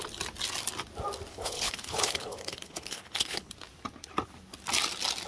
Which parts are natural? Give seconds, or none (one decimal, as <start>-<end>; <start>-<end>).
0.0-1.3; 3.5-5.3